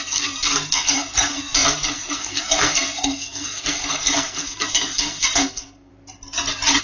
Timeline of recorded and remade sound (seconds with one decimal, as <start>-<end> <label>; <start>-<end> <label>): 0.0-5.9 remade; 5.9-6.8 recorded